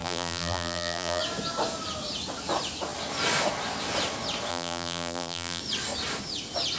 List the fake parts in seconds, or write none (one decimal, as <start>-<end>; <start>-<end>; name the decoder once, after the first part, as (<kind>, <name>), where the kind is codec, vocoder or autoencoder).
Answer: 0.0-1.2 (vocoder, BigVGAN v2); 4.5-5.6